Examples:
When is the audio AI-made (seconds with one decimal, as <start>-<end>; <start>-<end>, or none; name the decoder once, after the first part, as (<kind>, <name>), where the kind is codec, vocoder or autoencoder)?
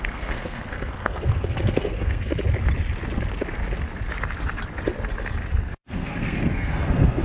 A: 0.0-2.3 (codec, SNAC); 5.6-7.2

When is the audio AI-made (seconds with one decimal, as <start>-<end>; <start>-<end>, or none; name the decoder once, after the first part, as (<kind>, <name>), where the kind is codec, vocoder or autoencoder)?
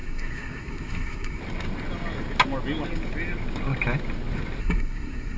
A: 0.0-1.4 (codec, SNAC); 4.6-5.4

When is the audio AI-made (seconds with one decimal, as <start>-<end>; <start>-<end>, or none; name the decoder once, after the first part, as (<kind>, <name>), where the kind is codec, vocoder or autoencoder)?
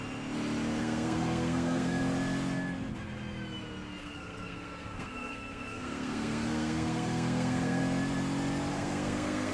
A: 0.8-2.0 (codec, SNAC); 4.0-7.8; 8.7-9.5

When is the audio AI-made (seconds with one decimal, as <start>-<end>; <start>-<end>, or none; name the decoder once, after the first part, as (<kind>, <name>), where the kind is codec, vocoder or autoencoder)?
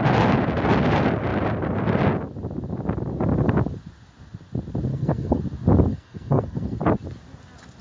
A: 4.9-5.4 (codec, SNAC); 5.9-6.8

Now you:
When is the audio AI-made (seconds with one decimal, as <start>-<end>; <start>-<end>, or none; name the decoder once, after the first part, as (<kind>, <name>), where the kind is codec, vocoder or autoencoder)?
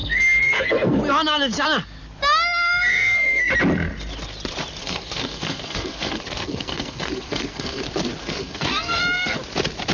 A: 0.0-1.0 (codec, SNAC); 2.7-3.5; 4.8-7.8; 8.2-9.4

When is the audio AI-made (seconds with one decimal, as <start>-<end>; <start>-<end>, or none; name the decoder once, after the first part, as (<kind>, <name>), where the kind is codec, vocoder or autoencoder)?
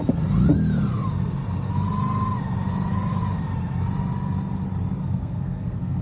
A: 5.0-6.0 (codec, SNAC)